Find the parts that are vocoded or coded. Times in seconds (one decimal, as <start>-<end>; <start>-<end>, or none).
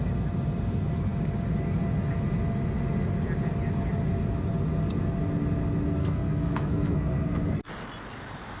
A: 6.0-7.7